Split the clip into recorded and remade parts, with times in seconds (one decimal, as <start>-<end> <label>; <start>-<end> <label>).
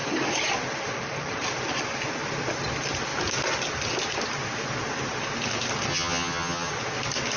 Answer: 0.0-5.9 recorded; 5.9-6.7 remade; 6.7-7.4 recorded